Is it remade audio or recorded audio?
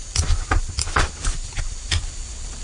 remade